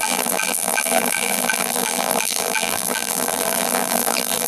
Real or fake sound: fake